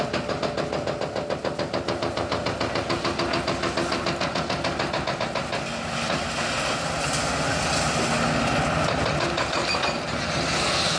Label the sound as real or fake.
real